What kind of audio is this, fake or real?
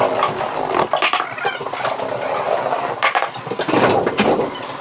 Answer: real